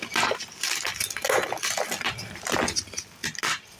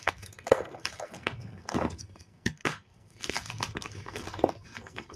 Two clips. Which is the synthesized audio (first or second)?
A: second